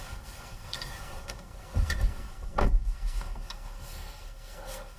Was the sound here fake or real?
fake